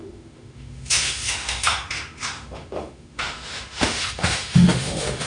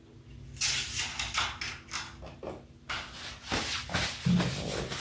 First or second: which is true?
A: second